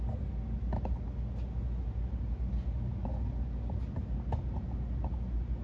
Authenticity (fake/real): real